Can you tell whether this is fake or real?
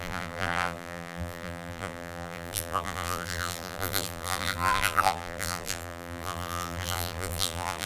fake